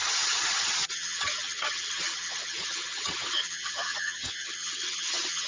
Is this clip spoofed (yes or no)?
yes